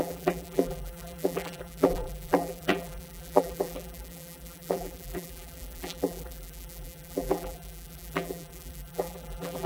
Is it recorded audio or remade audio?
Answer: remade